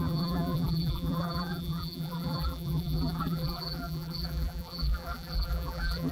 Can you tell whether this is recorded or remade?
remade